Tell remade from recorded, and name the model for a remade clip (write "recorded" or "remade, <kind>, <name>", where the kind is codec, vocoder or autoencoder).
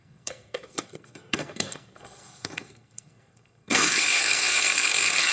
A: remade, codec, SNAC